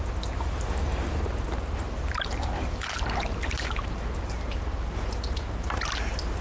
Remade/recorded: recorded